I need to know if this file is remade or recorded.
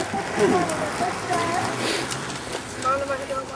recorded